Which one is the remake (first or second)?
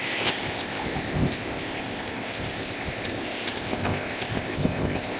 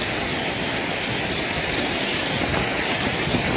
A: first